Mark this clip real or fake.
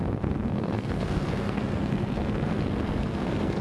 fake